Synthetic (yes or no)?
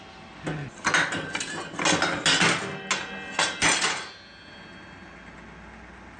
no